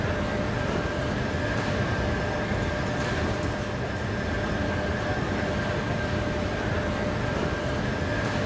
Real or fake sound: real